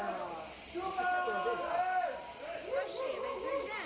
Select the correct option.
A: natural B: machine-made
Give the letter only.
A